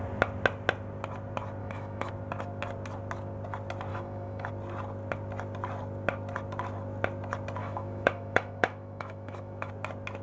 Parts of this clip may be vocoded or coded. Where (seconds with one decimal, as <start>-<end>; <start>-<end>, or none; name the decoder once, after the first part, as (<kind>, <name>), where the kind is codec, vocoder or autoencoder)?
1.6-2.1 (autoencoder, DAC-VAE); 3.9-4.5; 7.6-9.7